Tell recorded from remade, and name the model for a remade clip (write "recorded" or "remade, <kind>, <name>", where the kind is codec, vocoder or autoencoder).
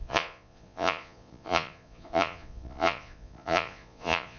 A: remade, vocoder, Vocos